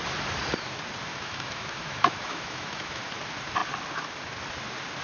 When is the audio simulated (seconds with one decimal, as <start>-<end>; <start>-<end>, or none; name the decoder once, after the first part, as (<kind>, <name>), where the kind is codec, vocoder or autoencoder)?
1.1-3.0 (autoencoder, DAC-VAE)